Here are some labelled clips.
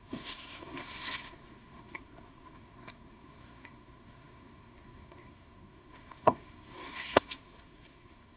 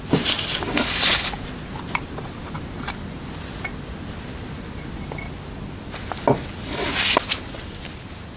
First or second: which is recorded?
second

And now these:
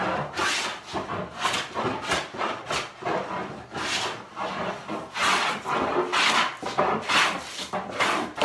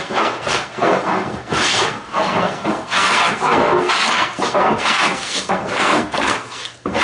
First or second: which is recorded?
first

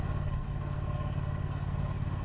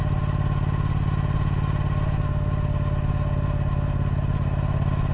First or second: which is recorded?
second